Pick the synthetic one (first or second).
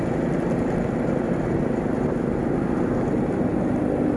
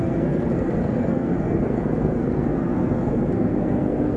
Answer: second